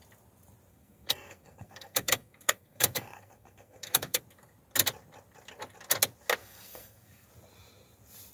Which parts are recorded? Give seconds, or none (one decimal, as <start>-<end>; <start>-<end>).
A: 0.0-0.7; 4.2-6.4; 7.3-8.3